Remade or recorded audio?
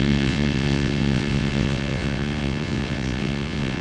remade